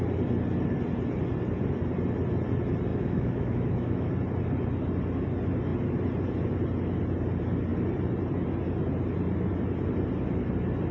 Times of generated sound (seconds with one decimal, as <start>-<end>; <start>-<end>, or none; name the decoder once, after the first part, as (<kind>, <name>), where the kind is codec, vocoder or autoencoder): 2.9-4.1 (autoencoder, DAC-VAE)